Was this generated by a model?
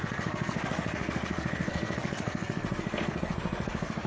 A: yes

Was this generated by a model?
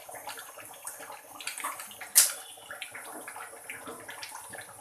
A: no